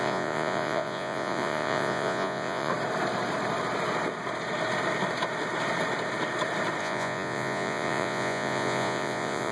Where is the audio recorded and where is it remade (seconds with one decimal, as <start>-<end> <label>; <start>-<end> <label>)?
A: 0.0-2.7 remade; 2.7-6.8 recorded; 6.8-9.5 remade